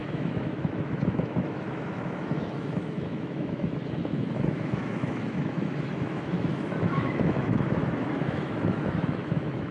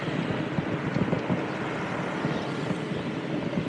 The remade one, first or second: first